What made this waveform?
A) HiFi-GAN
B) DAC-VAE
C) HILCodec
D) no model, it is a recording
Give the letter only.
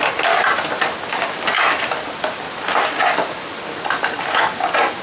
D